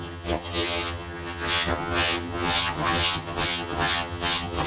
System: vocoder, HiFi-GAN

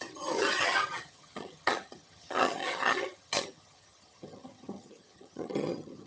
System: vocoder, HiFi-GAN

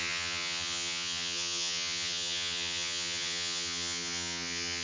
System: vocoder, HiFi-GAN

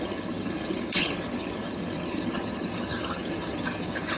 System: vocoder, HiFi-GAN